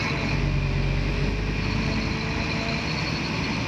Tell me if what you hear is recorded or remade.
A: recorded